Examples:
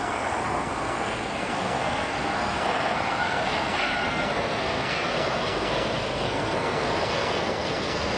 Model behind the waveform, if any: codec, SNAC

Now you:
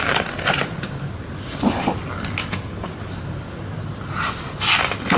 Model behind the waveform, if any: none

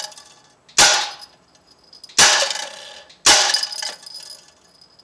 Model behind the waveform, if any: none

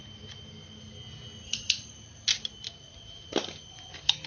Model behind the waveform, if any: none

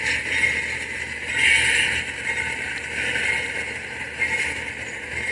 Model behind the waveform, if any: none